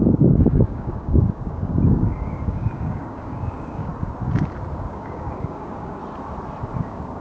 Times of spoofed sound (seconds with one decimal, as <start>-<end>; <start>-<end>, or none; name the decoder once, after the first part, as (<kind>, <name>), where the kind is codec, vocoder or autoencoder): 0.0-3.9 (codec, DAC); 4.9-6.0; 6.8-7.2